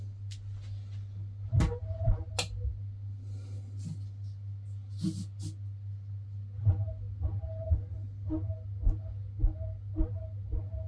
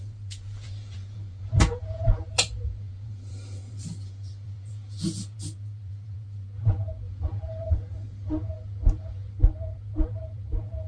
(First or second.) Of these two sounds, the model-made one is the second